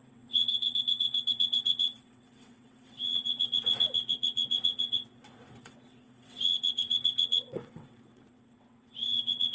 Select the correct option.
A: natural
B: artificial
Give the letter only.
B